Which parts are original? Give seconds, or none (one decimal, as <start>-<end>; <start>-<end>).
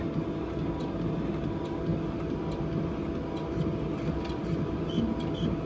0.0-5.7